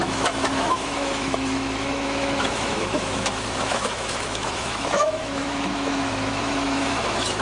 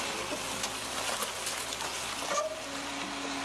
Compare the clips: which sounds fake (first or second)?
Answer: first